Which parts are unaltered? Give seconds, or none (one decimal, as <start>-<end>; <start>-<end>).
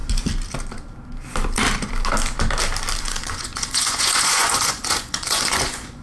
0.0-3.0